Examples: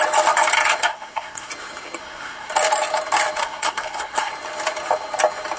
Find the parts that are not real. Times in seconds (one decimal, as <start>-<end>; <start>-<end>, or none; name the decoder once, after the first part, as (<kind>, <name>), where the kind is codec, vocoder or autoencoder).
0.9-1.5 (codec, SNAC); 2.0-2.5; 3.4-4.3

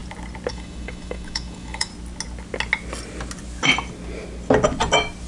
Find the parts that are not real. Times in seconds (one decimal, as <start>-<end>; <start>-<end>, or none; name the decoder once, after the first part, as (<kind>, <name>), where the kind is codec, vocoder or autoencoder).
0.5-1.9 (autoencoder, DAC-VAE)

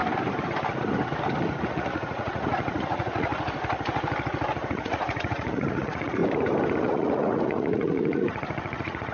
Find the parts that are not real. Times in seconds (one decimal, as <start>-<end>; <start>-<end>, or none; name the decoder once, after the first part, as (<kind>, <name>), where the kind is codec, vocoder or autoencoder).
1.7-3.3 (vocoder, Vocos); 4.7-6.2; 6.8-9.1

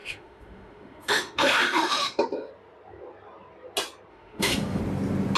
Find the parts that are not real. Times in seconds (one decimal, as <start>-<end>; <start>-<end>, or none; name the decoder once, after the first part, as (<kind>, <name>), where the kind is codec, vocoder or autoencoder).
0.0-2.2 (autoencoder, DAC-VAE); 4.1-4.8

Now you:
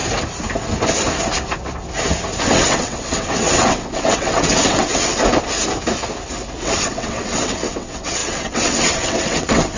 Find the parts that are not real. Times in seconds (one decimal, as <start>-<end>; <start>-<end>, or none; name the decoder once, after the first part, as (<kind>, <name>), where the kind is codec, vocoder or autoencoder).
2.4-5.2 (vocoder, WaveNeXt); 6.6-9.8